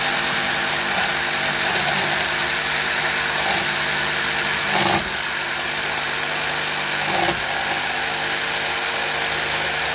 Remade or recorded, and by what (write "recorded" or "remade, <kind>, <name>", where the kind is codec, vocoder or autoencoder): recorded